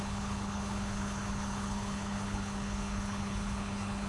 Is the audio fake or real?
fake